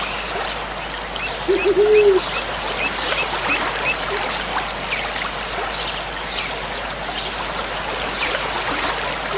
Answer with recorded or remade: recorded